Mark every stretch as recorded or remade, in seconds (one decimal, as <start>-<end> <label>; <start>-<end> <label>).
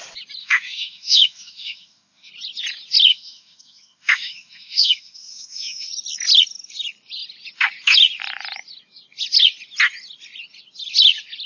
0.0-0.4 recorded; 0.4-2.3 remade; 2.3-3.1 recorded; 3.1-5.9 remade; 5.9-11.5 recorded